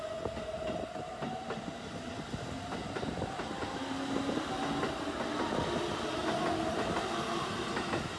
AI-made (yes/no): no